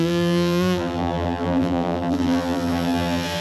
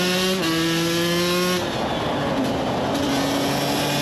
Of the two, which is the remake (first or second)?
first